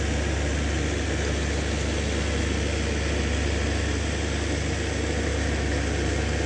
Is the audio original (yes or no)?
yes